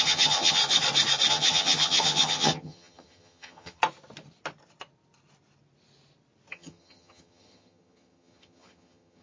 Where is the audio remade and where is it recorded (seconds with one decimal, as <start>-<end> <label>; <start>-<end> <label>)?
0.0-0.6 remade; 0.6-1.3 recorded; 1.3-3.8 remade; 3.8-6.5 recorded; 6.5-9.2 remade